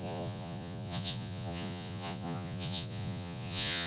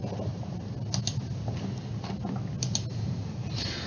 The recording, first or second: second